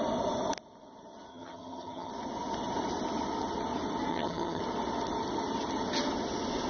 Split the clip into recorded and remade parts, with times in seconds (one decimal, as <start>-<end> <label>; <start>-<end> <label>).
0.0-1.3 recorded; 1.3-2.1 remade; 2.1-4.1 recorded; 4.1-4.6 remade; 4.6-6.7 recorded